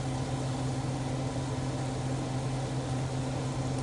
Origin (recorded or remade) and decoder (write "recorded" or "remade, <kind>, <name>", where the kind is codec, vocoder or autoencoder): recorded